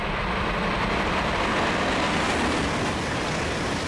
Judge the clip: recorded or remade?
recorded